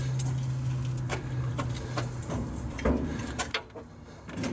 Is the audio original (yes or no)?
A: yes